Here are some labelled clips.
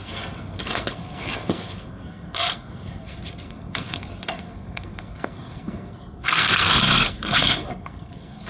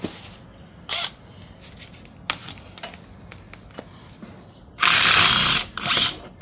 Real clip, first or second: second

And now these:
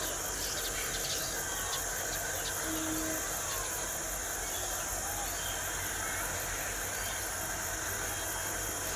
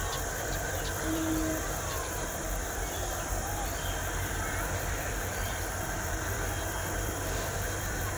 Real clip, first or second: first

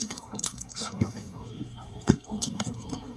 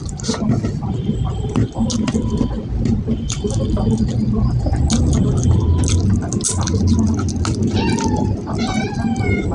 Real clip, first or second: second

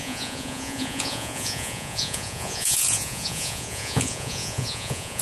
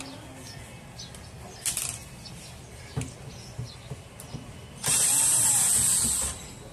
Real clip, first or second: second